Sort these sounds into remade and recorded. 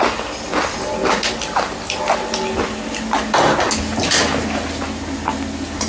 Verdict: recorded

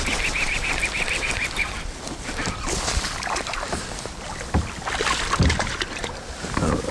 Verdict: remade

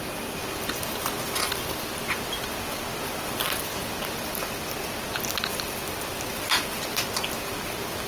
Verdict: recorded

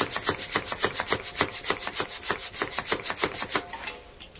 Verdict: recorded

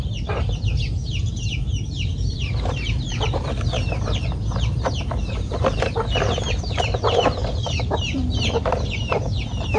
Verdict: remade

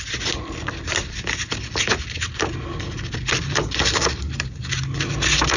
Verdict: recorded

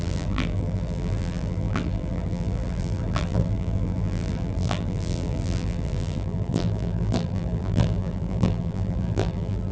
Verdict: remade